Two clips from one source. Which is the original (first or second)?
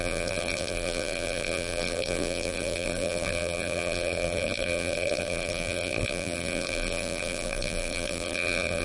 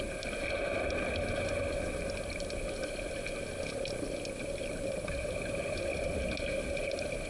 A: second